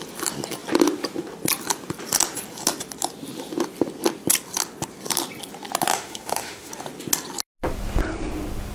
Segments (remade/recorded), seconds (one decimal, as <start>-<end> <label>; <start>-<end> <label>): 0.0-5.9 recorded; 5.9-6.7 remade; 6.7-8.7 recorded